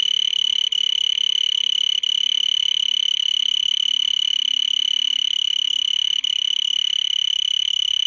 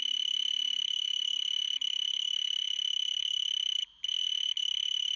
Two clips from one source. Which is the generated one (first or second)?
second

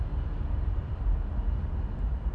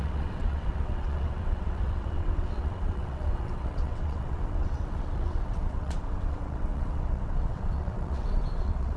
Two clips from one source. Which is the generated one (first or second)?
second